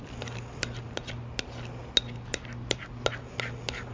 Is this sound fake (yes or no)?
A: no